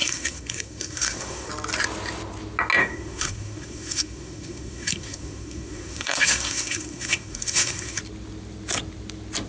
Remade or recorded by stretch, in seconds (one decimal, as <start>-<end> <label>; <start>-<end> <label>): 0.0-1.5 remade; 1.5-2.8 recorded; 2.8-8.0 remade; 8.0-9.5 recorded